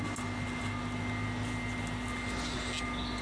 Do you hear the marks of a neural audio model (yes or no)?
no